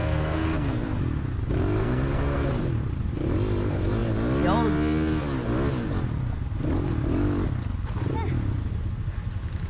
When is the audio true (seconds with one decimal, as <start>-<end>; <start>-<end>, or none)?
1.0-1.8; 2.5-9.7